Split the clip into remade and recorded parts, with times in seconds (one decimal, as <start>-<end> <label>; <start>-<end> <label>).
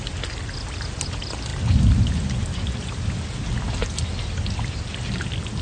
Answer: 0.0-5.6 recorded